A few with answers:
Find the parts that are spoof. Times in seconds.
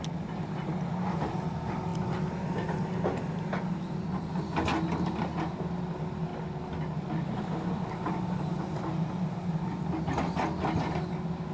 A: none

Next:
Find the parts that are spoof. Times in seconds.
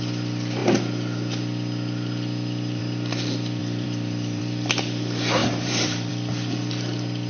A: 3.6-4.4 (vocoder, BigVGAN v2); 5.4-6.1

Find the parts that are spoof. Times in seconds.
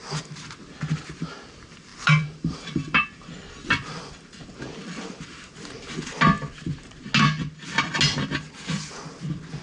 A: 1.9-5.2 (vocoder, BigVGAN v2)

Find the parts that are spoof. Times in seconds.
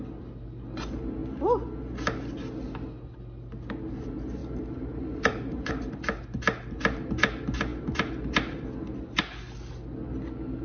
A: 4.4-5.7 (vocoder, BigVGAN v2)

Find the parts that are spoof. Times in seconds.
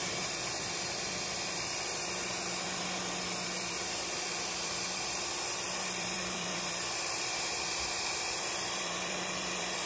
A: 0.7-9.9 (vocoder, BigVGAN v2)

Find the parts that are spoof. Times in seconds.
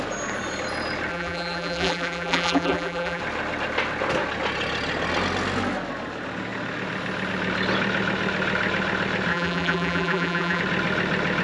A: 1.1-3.2 (vocoder, BigVGAN v2); 9.3-10.6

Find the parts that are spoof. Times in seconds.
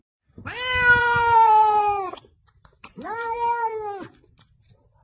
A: 1.0-3.7 (vocoder, BigVGAN v2)